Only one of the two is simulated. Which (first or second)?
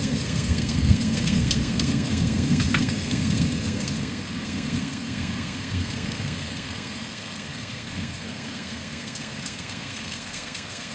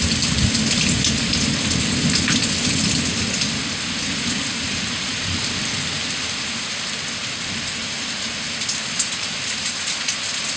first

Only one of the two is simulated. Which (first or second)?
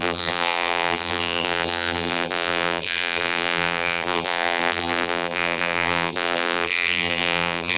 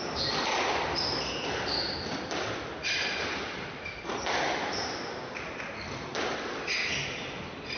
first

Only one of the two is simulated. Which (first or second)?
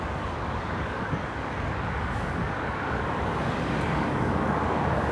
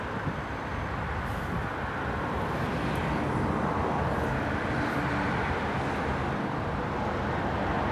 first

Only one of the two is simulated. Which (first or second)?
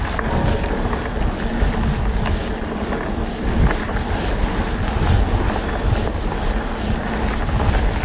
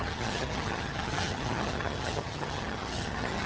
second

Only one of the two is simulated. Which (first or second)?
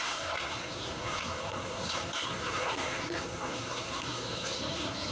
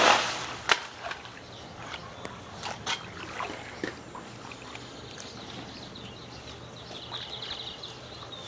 first